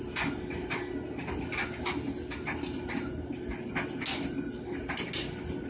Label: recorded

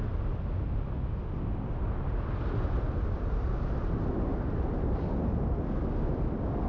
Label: recorded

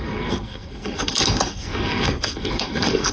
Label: remade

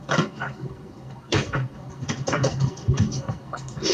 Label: remade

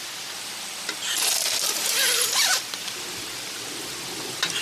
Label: recorded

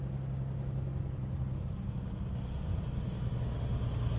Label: recorded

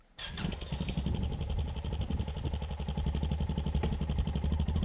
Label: recorded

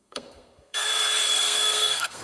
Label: remade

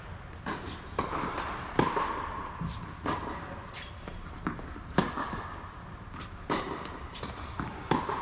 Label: recorded